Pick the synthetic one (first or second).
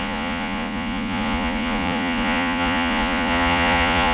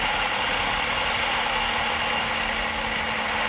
first